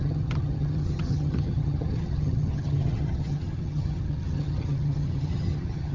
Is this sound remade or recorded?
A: remade